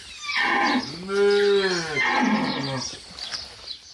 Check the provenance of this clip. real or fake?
real